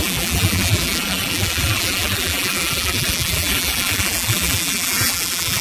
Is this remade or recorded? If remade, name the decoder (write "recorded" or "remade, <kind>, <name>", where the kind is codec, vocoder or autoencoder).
remade, vocoder, BigVGAN v2